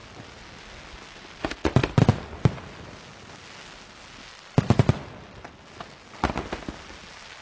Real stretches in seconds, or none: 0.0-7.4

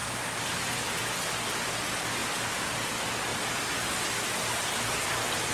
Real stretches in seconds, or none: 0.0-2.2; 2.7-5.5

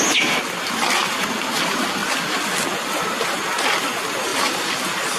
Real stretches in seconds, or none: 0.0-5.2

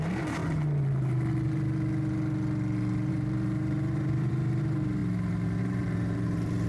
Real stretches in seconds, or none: 0.4-3.1; 5.0-5.6

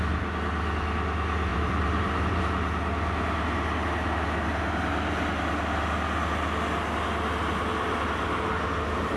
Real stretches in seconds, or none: 0.0-1.5; 2.4-9.2

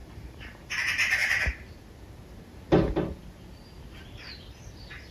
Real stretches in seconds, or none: 0.7-5.1

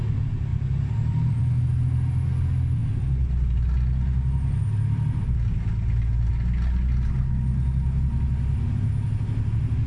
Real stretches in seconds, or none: 0.0-0.5; 1.4-9.9

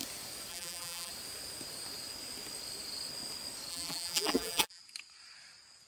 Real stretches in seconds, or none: 0.0-0.5; 1.1-3.7; 4.8-5.9